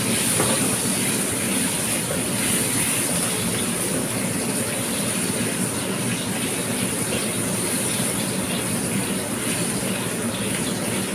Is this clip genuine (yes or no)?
yes